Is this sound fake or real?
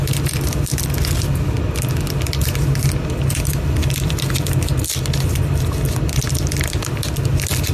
real